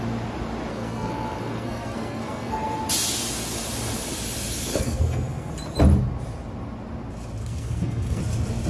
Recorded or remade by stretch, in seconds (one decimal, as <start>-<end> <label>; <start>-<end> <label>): 0.0-0.7 recorded; 0.7-2.8 remade; 2.8-4.7 recorded; 4.7-5.5 remade; 5.5-7.4 recorded; 7.4-8.2 remade; 8.2-8.7 recorded